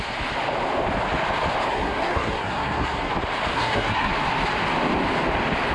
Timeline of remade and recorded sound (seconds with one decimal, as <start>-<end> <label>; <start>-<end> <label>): 0.0-1.7 recorded; 1.7-3.1 remade; 3.1-3.5 recorded; 3.5-4.1 remade; 4.1-5.7 recorded